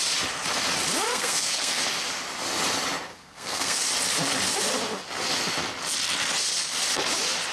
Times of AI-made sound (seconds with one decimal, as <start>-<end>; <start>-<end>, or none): 1.1-1.8; 3.1-3.8